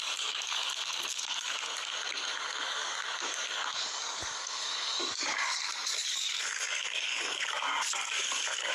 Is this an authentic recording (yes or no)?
no